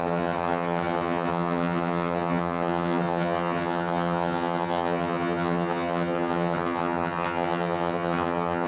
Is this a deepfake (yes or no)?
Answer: yes